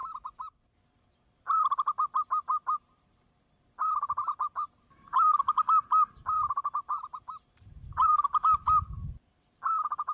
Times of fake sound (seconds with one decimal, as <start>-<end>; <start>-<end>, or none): none